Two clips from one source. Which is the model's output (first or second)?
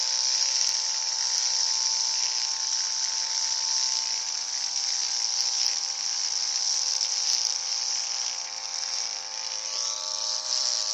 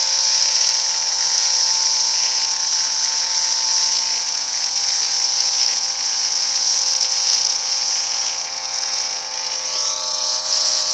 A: second